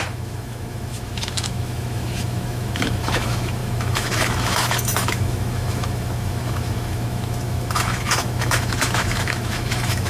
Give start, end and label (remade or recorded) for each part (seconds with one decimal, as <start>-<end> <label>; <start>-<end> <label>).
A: 0.0-10.1 remade